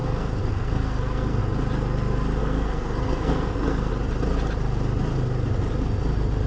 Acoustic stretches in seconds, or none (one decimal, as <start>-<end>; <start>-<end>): 1.4-2.4; 3.9-6.5

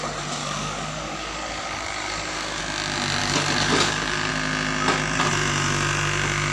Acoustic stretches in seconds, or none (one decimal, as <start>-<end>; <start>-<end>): 0.0-0.4; 2.6-3.2; 4.3-6.5

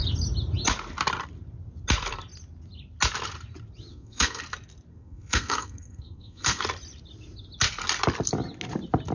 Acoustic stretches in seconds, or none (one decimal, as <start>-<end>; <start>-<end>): 0.0-3.9; 4.4-4.9; 6.6-9.1

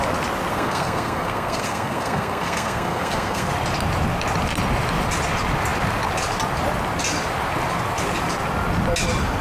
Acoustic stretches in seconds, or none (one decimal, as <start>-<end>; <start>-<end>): 0.0-0.5; 3.5-9.4

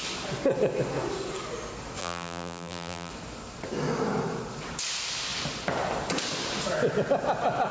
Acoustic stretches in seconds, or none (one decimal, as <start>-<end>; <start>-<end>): 0.0-2.0; 3.1-7.7

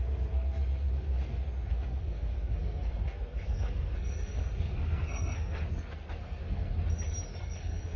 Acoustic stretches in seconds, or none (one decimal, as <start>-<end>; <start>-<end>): 6.7-7.4

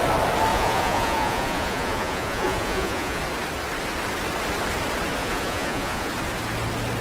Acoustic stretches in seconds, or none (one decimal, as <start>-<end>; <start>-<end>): 0.0-0.5; 3.2-5.2; 6.1-7.0